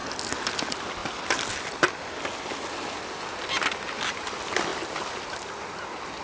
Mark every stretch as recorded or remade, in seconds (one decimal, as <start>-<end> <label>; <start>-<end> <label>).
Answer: 0.0-6.2 recorded